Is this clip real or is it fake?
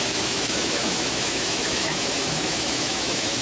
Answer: fake